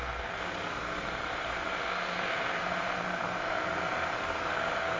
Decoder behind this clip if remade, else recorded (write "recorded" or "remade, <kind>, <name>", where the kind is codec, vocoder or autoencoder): remade, codec, SNAC